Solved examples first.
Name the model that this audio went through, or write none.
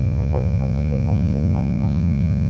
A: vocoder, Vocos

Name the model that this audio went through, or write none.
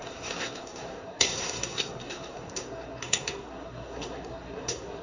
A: codec, SNAC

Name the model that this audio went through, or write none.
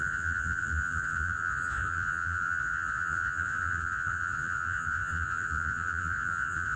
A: vocoder, Vocos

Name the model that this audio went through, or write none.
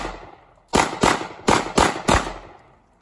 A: none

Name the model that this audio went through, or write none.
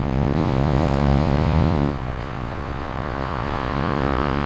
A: vocoder, Vocos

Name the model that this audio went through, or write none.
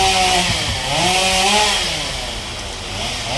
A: none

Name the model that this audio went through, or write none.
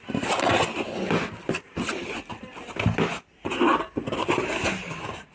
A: none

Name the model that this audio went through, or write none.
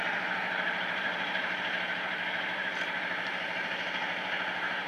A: vocoder, BigVGAN v2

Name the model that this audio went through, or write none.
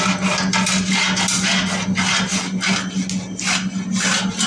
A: none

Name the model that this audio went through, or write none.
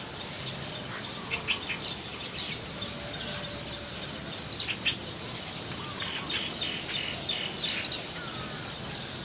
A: none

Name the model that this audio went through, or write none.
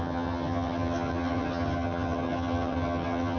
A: vocoder, HiFi-GAN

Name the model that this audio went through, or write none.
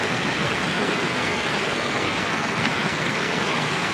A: codec, SNAC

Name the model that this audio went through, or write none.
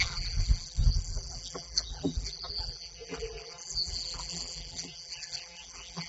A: vocoder, BigVGAN v2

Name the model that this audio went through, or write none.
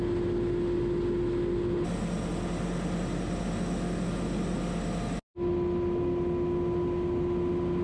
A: none